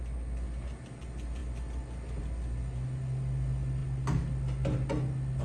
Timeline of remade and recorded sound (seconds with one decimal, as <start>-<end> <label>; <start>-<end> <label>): 0.0-5.4 recorded